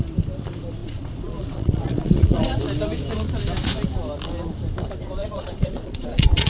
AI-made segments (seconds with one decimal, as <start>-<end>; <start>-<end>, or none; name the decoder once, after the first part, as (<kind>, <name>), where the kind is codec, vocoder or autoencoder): 0.8-2.6 (vocoder, Vocos); 5.2-6.5